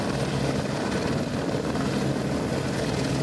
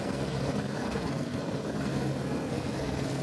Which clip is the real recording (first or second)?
first